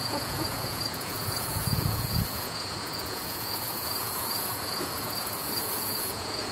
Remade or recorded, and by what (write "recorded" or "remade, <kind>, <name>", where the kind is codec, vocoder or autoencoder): remade, vocoder, Vocos